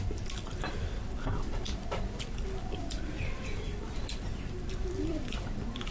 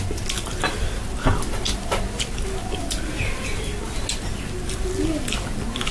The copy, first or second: first